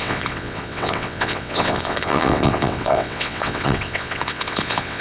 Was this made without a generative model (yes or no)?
no